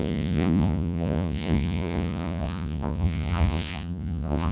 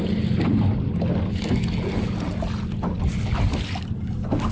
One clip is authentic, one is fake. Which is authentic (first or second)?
second